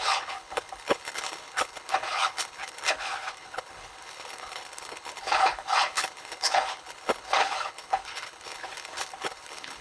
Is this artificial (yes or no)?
yes